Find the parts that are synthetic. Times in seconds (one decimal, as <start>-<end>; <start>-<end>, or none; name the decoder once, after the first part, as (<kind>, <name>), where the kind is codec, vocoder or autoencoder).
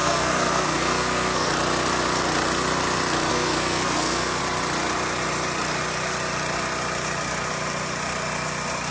0.0-1.5 (codec, SNAC); 3.3-4.4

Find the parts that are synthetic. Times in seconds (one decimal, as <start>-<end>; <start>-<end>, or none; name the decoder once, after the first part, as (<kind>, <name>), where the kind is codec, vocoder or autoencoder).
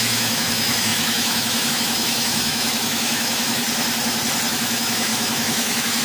0.0-3.6 (autoencoder, DAC-VAE); 4.5-6.0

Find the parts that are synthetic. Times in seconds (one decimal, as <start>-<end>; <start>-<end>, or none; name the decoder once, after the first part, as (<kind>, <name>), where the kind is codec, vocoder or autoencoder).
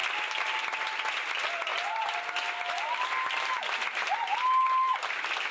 none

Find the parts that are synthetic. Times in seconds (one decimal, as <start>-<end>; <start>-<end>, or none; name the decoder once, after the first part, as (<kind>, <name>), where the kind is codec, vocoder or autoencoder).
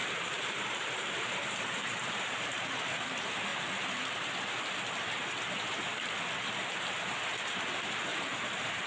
0.0-2.6 (vocoder, BigVGAN v2); 8.1-8.9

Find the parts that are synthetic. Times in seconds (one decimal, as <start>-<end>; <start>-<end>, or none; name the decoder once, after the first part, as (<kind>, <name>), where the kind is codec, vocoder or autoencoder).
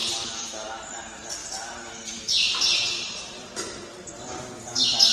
0.0-0.7 (vocoder, BigVGAN v2); 1.4-3.6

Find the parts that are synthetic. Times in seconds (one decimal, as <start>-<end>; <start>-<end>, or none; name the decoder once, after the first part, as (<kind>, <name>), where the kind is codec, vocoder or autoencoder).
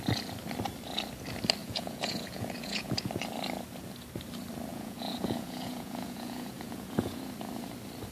1.6-3.1 (vocoder, Vocos); 4.7-7.2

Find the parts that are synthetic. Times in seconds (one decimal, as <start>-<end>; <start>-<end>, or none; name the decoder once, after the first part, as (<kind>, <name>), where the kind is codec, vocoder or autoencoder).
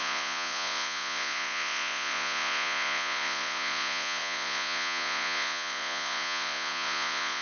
0.0-7.4 (vocoder, Vocos)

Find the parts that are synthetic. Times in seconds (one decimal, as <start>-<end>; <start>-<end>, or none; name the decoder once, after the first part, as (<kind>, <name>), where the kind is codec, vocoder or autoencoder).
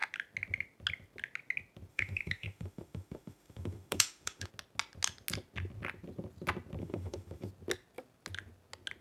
1.9-4.5 (autoencoder, DAC-VAE); 6.8-7.5